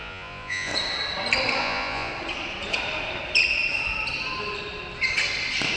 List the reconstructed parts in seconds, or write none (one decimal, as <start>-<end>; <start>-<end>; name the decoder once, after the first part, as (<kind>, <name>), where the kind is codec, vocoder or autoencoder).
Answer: 0.0-0.7 (vocoder, Vocos); 1.6-2.1